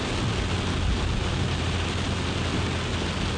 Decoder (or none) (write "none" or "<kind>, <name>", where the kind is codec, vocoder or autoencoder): none